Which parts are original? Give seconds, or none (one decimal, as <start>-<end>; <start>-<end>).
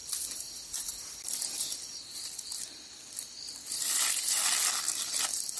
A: 0.0-5.6